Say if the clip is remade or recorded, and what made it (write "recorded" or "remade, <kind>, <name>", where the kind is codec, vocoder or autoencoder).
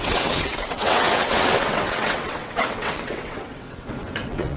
remade, vocoder, WaveNeXt